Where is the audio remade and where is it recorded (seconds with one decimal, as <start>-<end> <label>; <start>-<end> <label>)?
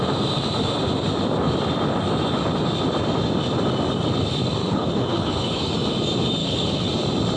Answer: 0.0-4.6 recorded; 4.6-5.7 remade; 5.7-6.4 recorded; 6.4-6.9 remade; 6.9-7.4 recorded